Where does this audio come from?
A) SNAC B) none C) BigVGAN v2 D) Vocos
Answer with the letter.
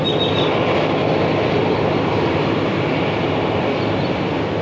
B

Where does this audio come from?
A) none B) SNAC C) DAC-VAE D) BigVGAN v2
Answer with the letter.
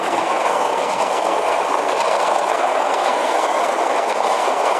B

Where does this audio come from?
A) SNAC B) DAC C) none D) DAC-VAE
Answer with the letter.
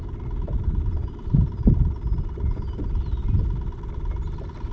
C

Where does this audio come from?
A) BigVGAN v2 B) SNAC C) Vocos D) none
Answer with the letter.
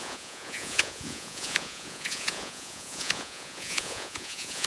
C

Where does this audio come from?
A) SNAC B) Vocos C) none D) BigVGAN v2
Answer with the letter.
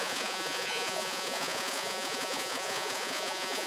B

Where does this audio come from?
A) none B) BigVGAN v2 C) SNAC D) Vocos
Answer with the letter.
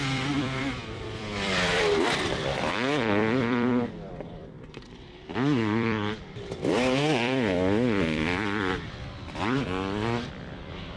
B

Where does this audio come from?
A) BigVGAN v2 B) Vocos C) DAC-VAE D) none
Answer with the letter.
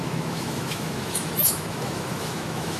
C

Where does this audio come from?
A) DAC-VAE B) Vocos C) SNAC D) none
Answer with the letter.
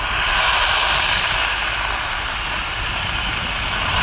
D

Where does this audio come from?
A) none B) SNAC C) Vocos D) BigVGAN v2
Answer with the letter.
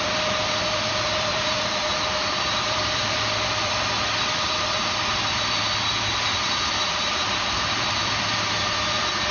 D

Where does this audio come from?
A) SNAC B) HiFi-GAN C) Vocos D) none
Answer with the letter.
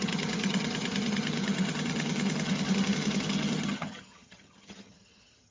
B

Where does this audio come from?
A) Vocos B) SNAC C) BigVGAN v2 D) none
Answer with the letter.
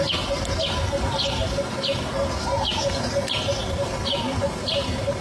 D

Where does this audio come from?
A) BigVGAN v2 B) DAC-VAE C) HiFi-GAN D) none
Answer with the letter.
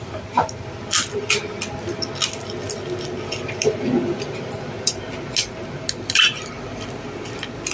D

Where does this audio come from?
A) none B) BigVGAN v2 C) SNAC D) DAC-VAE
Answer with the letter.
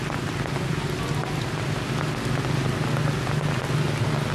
A